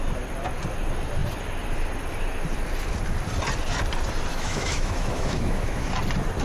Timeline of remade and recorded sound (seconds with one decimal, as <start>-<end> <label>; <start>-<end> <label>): 0.0-4.3 recorded; 4.3-5.9 remade; 5.9-6.4 recorded